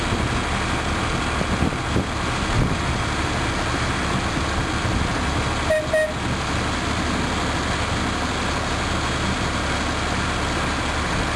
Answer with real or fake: real